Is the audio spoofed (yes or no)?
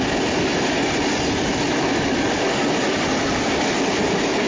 no